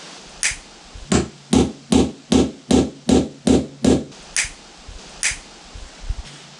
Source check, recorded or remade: recorded